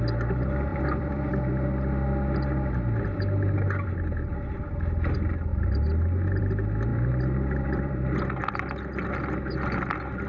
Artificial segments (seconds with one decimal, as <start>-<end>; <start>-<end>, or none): 0.7-1.5; 6.9-8.5